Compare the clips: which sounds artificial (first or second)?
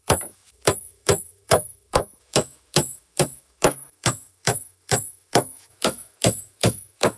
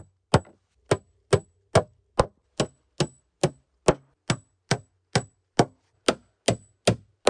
first